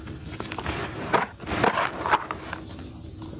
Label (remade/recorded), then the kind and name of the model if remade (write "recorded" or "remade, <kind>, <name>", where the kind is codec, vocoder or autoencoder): recorded